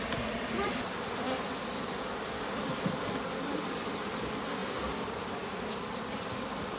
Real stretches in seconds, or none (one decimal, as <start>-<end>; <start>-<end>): 0.0-6.8